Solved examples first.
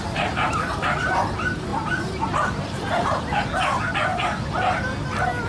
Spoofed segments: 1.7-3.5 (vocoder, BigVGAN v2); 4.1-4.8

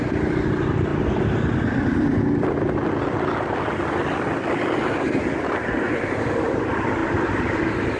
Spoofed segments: none

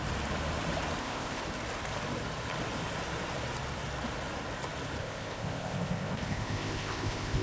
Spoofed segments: 1.0-1.4 (codec, ZipCodec); 5.0-7.4